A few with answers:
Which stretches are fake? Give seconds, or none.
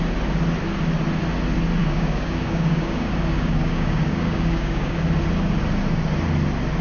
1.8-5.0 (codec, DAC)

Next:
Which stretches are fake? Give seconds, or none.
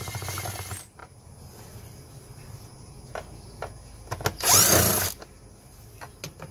none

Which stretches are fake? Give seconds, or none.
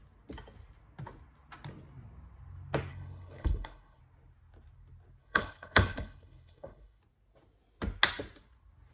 2.9-4.0 (codec, HILCodec); 5.2-7.0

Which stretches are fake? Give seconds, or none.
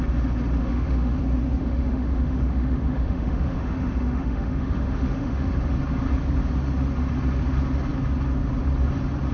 0.6-1.2 (autoencoder, DAC-VAE); 1.6-5.5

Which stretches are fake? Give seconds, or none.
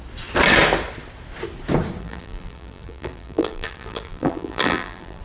2.0-5.2 (vocoder, BigVGAN v2)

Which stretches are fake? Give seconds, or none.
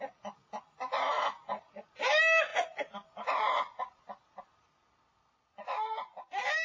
none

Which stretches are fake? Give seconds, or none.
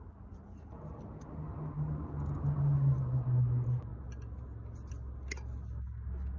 none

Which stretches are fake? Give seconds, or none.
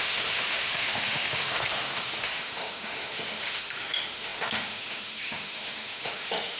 0.0-6.6 (autoencoder, DAC-VAE)